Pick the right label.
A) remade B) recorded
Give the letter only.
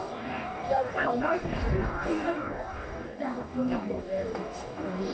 A